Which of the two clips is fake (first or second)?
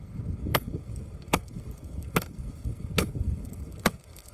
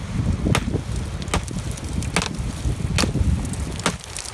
first